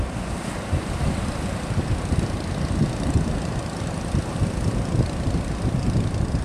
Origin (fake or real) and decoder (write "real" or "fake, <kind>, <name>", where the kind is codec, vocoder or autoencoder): fake, vocoder, BigVGAN v2